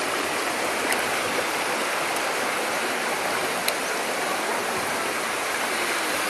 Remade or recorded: recorded